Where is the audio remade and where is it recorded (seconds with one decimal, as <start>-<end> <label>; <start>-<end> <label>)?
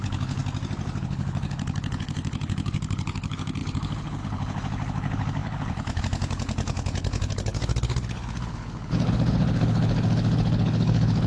0.0-0.4 remade; 0.4-1.0 recorded; 1.0-11.3 remade